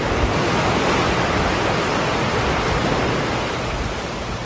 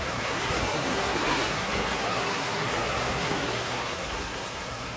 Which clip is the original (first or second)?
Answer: first